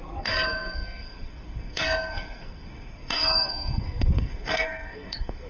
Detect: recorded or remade remade